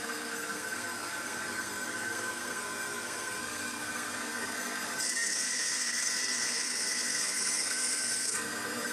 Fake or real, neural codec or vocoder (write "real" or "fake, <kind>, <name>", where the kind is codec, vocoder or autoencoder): fake, codec, SNAC